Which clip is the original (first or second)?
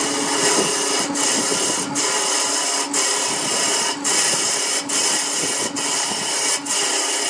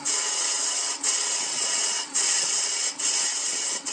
first